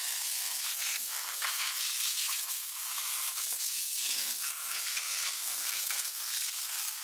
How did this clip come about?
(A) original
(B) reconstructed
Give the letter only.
B